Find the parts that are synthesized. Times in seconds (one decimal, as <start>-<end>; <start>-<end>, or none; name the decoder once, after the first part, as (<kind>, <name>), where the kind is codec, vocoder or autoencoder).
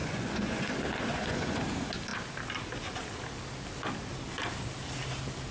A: 0.0-0.7 (vocoder, Vocos); 1.1-1.6